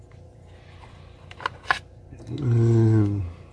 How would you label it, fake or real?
real